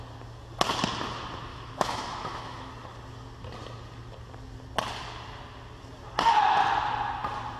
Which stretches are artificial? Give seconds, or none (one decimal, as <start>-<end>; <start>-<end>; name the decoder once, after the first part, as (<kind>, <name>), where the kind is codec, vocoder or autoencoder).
1.5-2.7 (autoencoder, DAC-VAE)